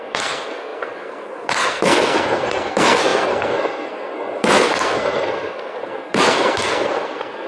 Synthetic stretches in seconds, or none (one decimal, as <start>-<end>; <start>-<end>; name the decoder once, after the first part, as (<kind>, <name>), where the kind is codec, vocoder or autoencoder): 0.0-7.5 (codec, SNAC)